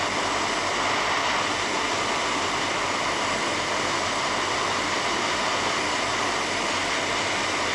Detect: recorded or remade recorded